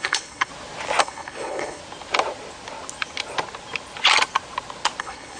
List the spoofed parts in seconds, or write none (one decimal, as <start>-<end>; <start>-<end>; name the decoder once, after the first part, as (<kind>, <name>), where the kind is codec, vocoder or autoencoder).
0.0-0.5 (codec, HILCodec); 1.0-1.8; 5.0-5.4